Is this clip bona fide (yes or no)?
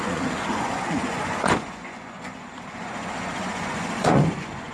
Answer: no